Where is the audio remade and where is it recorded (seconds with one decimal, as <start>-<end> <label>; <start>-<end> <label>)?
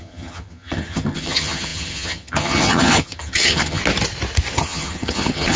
0.0-3.8 remade; 3.8-4.6 recorded; 4.6-5.6 remade